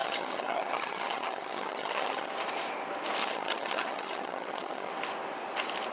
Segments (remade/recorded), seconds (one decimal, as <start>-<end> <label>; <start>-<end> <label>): 0.0-2.3 remade; 2.3-3.2 recorded; 3.2-4.9 remade; 4.9-5.9 recorded